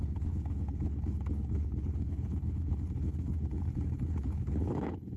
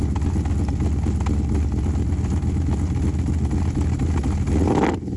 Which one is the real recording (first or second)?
second